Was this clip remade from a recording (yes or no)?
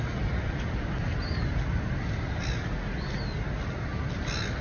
no